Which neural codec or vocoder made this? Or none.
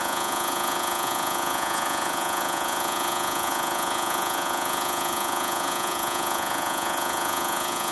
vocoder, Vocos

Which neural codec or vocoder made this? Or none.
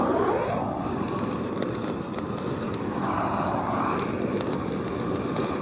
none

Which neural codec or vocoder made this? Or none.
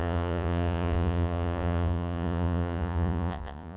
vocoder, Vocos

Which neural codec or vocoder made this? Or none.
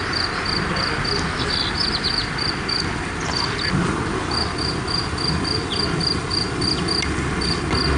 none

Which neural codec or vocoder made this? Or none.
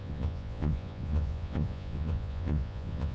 vocoder, Vocos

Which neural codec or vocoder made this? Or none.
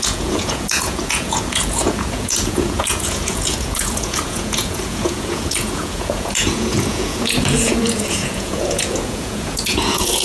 vocoder, Vocos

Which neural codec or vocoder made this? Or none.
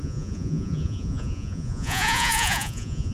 vocoder, Vocos